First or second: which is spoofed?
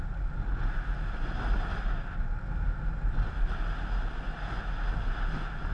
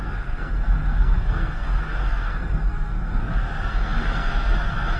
second